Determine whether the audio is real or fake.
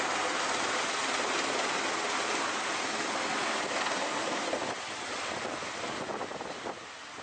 real